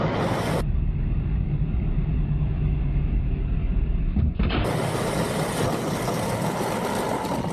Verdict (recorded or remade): recorded